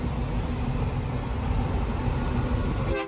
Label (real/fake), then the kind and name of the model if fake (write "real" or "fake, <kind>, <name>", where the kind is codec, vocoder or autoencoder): real